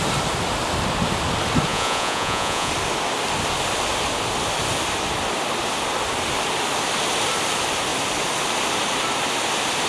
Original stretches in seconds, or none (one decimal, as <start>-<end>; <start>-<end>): 0.0-1.7; 2.7-9.9